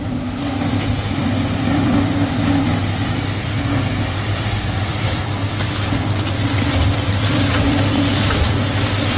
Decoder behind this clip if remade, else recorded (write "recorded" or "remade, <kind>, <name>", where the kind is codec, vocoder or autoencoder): remade, vocoder, BigVGAN v2